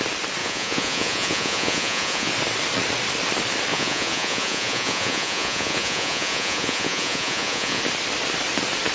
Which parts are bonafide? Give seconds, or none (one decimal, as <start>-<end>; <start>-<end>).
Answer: 0.0-0.4; 2.3-3.7; 7.8-8.9

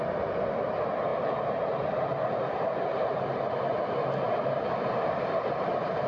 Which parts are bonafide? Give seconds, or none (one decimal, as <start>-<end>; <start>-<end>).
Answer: 0.0-6.1